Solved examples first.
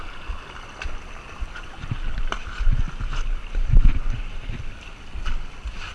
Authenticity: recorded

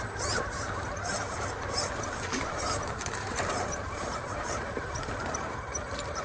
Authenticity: remade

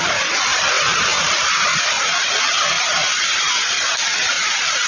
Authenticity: recorded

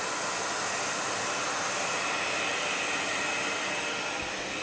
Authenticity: recorded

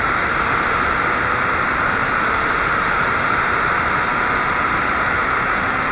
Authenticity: remade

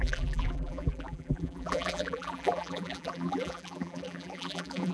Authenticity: remade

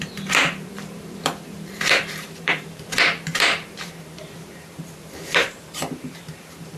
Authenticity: remade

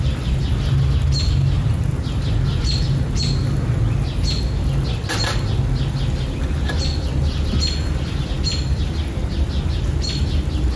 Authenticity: recorded